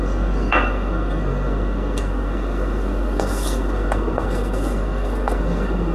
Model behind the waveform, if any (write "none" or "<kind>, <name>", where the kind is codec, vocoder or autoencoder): codec, SNAC